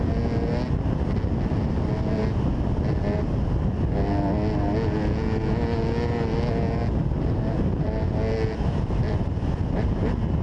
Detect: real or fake real